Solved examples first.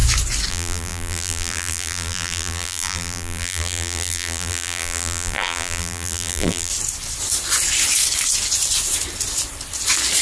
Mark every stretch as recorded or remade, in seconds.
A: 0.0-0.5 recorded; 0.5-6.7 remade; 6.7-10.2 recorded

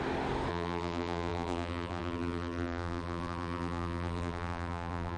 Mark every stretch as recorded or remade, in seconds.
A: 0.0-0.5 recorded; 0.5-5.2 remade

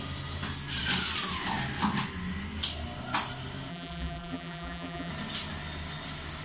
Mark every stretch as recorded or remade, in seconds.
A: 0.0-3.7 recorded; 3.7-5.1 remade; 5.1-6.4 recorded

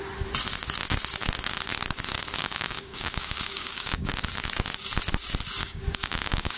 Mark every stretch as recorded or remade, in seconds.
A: 0.0-2.4 recorded; 2.4-4.1 remade; 4.1-5.6 recorded; 5.6-6.6 remade

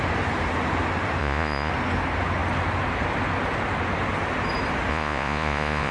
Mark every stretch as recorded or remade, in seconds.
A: 0.0-1.2 recorded; 1.2-1.7 remade; 1.7-4.9 recorded; 4.9-5.9 remade

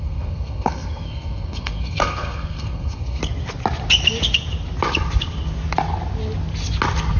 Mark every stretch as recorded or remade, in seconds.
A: 0.0-3.2 remade; 3.2-7.2 recorded